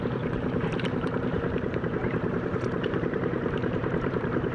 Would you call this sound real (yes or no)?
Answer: no